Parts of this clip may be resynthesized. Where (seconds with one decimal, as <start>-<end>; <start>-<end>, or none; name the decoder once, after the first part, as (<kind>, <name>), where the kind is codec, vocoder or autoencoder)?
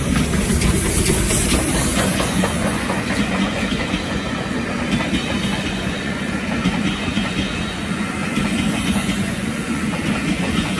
1.9-4.8 (vocoder, Vocos); 5.5-10.8